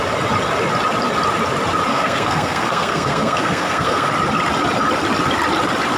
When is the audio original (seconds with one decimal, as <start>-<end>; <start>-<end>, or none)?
0.0-1.9; 4.1-6.0